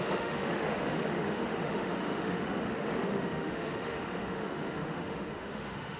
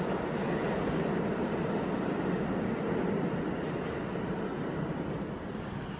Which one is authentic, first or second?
second